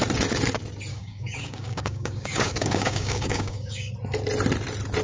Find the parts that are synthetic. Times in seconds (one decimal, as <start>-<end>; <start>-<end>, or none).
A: 0.9-3.9

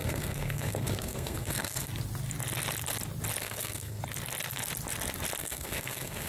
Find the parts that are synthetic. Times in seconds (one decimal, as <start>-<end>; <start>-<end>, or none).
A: 0.0-1.9; 3.4-4.0; 5.4-6.3

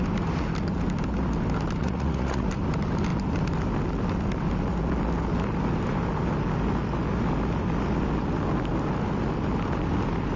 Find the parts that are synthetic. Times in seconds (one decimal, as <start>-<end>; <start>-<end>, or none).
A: 1.8-2.5

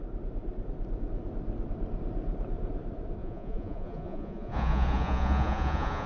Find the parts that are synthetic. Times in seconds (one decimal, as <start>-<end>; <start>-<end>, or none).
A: 3.2-6.1

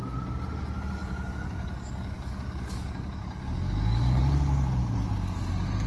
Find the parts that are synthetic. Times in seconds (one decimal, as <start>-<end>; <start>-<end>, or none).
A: 1.0-4.2

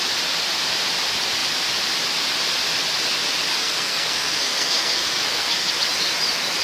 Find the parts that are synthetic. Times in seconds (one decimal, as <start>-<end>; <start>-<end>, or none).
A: 3.5-5.7